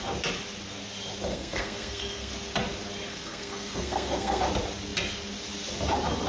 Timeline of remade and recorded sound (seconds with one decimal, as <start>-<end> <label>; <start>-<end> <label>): 0.0-1.3 recorded; 1.3-2.3 remade; 2.3-3.1 recorded; 3.1-4.4 remade; 4.4-6.3 recorded